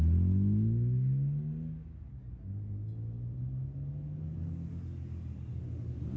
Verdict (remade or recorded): recorded